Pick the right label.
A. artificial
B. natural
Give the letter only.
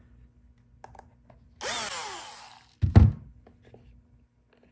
B